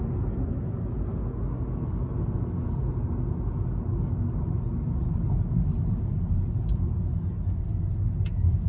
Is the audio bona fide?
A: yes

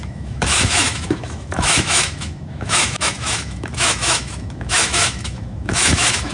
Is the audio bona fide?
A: no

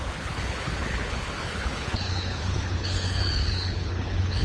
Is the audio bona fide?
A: no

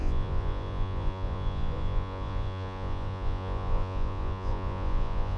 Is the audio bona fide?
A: no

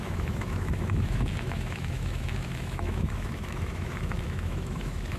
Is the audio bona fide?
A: no